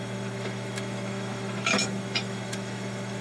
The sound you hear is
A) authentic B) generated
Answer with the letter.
B